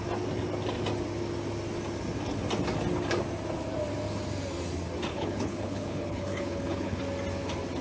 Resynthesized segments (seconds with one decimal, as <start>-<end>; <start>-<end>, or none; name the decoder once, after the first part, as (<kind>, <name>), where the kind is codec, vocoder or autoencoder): 5.1-7.0 (codec, HILCodec)